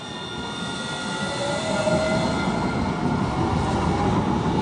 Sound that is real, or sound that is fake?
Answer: real